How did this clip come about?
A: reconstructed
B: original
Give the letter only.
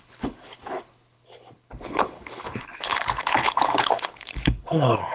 A